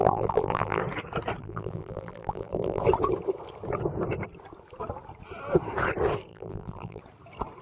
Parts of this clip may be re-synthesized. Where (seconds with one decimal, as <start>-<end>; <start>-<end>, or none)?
0.0-0.8; 1.4-2.8; 6.3-7.0